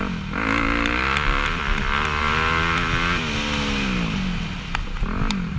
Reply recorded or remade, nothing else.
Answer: recorded